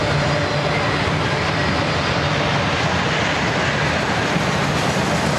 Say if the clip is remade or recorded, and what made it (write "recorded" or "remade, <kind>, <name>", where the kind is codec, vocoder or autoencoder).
recorded